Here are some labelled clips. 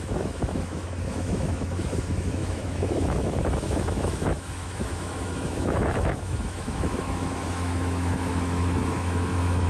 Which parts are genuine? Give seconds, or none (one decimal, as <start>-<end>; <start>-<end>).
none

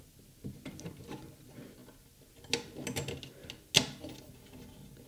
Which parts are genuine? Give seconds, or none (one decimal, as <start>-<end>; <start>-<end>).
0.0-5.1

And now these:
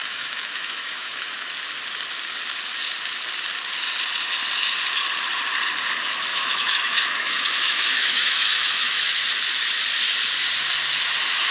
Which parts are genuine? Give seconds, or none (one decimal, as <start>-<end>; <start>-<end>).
1.5-6.3; 9.3-11.5